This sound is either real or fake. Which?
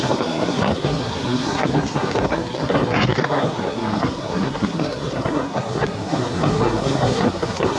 fake